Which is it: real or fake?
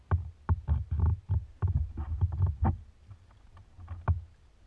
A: real